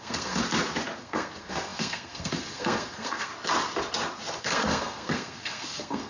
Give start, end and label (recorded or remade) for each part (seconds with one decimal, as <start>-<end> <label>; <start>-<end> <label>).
0.0-0.4 remade; 0.4-1.0 recorded; 1.0-3.3 remade; 3.3-4.4 recorded; 4.4-6.1 remade